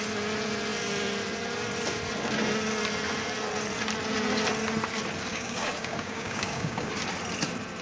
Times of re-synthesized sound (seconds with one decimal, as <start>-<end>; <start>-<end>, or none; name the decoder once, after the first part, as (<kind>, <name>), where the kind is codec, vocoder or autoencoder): 5.3-6.9 (codec, DAC)